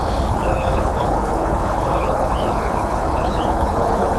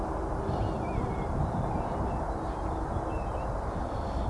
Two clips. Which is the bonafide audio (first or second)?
second